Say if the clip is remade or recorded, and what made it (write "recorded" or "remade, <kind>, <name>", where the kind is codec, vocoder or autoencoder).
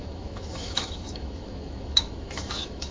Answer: remade, autoencoder, DAC-VAE